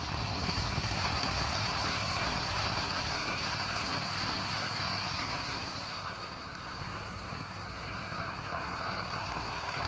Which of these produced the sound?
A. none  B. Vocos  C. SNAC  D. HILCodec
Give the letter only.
C